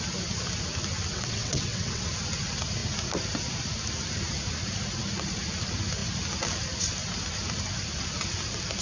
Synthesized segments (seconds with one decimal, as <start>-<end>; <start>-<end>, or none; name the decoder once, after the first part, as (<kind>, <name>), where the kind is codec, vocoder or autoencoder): 1.1-2.1 (vocoder, WaveNeXt)